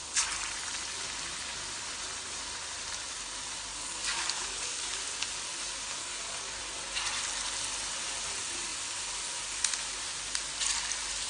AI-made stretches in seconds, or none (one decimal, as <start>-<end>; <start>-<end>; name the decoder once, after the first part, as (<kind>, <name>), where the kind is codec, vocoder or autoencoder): 3.7-5.0 (codec, DAC); 6.0-6.6